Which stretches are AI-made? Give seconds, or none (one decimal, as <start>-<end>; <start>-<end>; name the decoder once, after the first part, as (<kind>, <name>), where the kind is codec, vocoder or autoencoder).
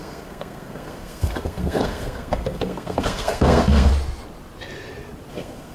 0.0-3.9 (codec, SNAC); 5.3-5.7